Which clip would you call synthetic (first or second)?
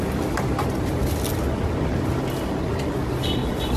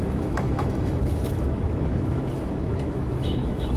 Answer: second